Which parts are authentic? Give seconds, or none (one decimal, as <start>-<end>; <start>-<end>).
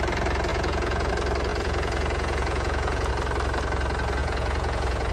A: 0.0-0.5; 1.1-1.5; 3.1-4.2